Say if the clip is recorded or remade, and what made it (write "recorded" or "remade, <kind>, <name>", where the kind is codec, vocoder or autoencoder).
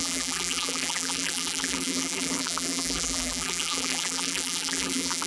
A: remade, vocoder, BigVGAN v2